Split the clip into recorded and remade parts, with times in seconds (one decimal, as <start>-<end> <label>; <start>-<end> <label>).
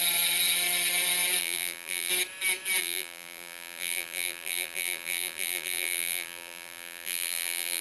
0.0-1.4 recorded; 1.4-2.1 remade; 2.1-2.8 recorded; 2.8-7.8 remade